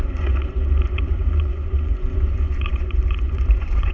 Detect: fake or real fake